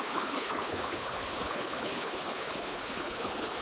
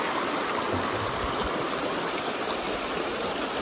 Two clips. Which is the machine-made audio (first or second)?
first